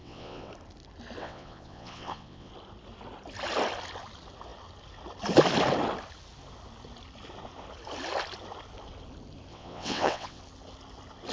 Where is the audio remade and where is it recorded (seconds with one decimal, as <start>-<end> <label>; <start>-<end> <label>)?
0.0-0.5 remade; 0.5-1.2 recorded; 1.2-2.5 remade; 2.5-9.5 recorded; 9.5-10.4 remade; 10.4-11.3 recorded